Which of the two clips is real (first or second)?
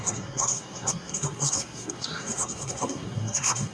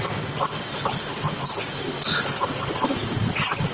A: second